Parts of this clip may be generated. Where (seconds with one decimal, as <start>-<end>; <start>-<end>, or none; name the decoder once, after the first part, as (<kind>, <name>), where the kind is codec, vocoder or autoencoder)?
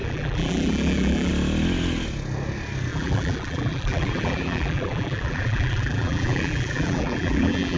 0.0-1.3 (vocoder, BigVGAN v2); 2.9-7.8